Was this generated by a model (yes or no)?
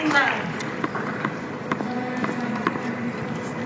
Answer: no